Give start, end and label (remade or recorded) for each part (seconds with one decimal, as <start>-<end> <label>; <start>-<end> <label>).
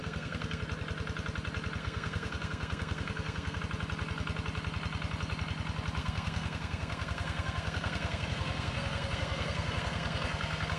0.0-0.6 remade; 0.6-1.8 recorded; 1.8-3.6 remade; 3.6-6.0 recorded; 6.0-10.8 remade